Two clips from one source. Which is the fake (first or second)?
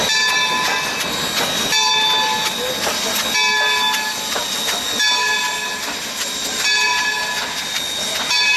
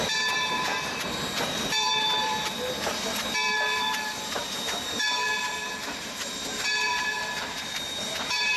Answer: second